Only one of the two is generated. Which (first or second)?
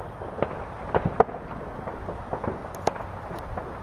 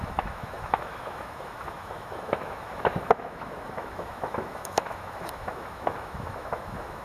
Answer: second